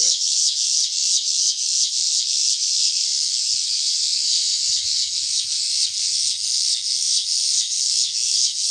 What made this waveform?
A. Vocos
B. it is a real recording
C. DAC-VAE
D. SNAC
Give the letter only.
D